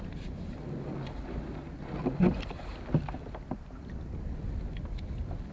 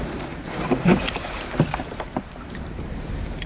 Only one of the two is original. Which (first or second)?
first